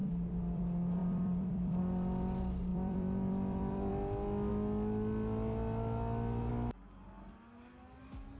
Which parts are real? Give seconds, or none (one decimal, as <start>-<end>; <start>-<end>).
0.6-1.0; 1.8-2.7; 3.9-8.4